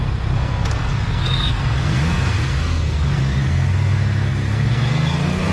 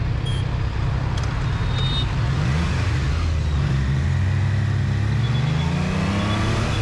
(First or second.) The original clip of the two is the second